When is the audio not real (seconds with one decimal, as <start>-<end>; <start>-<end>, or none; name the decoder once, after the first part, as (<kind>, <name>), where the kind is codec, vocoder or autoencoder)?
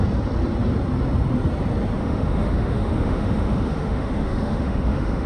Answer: 2.0-5.3 (autoencoder, DAC-VAE)